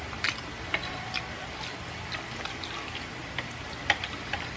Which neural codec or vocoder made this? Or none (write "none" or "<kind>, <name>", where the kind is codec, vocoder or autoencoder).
none